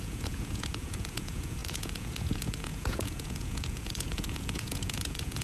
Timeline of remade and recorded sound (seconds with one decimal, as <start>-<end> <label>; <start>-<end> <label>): 0.0-5.4 remade